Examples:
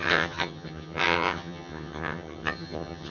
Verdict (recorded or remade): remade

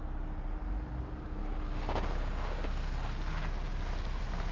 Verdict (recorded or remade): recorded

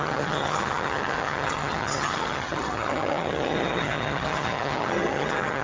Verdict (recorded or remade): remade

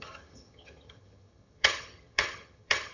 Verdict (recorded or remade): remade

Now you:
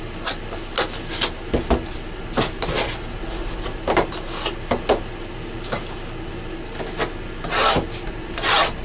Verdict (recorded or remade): recorded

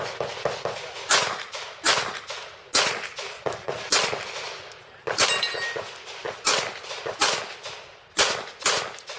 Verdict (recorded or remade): recorded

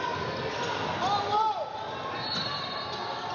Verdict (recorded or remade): recorded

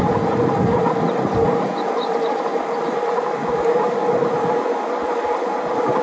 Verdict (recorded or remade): recorded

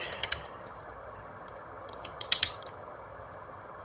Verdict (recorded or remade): remade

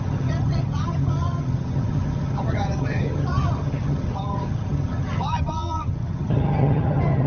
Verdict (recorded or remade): remade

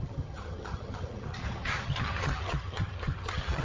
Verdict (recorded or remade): remade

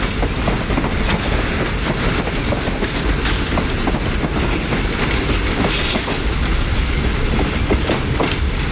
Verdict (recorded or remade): recorded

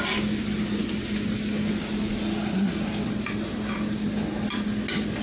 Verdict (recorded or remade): recorded